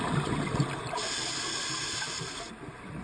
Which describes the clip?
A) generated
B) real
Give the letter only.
B